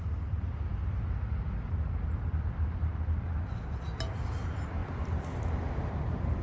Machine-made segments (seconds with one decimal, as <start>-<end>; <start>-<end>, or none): none